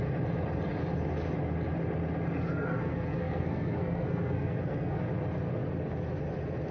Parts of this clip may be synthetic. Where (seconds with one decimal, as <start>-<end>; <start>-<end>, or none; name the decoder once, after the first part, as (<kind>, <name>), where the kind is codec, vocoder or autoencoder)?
2.5-5.0 (codec, SNAC)